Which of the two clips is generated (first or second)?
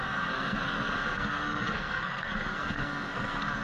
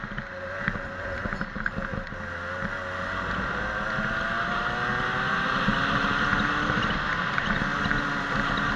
first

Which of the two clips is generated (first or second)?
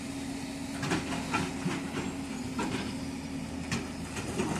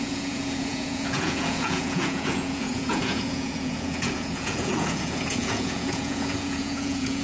second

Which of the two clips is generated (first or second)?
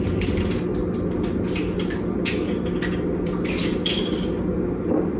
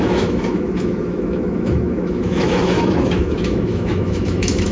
second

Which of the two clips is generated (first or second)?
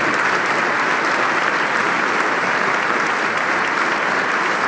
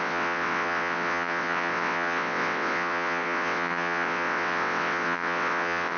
second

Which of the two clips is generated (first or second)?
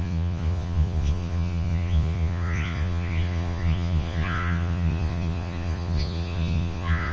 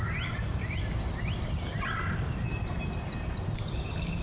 first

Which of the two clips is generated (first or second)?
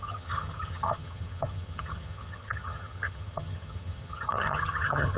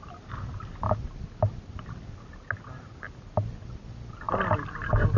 first